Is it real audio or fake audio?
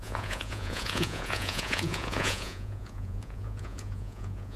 fake